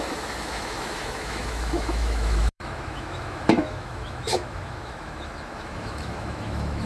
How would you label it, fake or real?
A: fake